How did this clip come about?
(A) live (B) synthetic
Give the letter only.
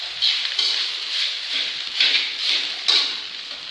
B